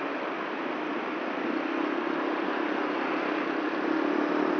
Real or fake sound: real